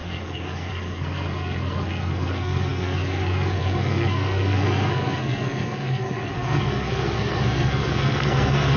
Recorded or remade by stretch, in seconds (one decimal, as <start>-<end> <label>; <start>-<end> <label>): 0.0-8.8 remade